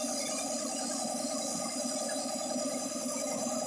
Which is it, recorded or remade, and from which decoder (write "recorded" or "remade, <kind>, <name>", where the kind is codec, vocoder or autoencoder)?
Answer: recorded